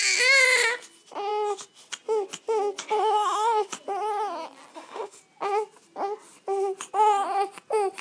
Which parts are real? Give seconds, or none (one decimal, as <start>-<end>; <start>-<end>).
0.0-3.0; 3.7-4.7; 5.2-8.0